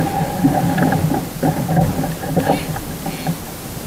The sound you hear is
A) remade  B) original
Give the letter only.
B